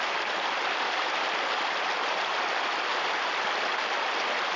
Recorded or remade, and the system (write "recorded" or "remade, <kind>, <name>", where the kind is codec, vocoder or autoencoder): recorded